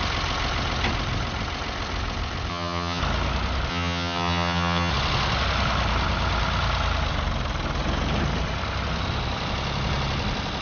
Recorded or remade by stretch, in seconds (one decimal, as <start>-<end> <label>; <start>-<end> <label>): 0.0-2.5 recorded; 2.5-3.0 remade; 3.0-3.7 recorded; 3.7-4.9 remade; 4.9-10.6 recorded

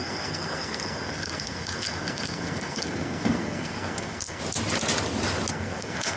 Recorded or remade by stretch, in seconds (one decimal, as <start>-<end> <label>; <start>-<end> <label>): 0.0-4.4 remade; 4.4-5.5 recorded; 5.5-6.2 remade

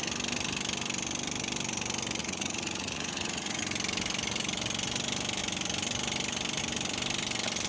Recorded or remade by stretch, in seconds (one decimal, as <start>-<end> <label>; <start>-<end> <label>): 0.0-2.2 recorded; 2.2-3.6 remade; 3.6-7.7 recorded

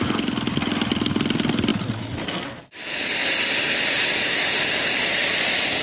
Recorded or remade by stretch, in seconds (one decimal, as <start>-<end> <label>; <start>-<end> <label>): 0.0-5.8 recorded

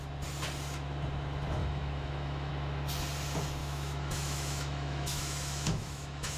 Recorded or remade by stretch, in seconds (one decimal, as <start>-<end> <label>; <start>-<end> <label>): 0.0-1.6 recorded; 1.6-2.5 remade; 2.5-3.6 recorded; 3.6-6.4 remade

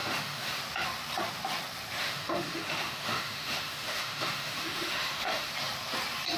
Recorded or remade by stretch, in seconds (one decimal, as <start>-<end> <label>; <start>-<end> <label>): 0.0-0.6 remade; 0.6-2.0 recorded; 2.0-5.5 remade; 5.5-6.4 recorded